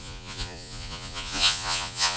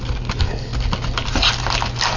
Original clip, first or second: second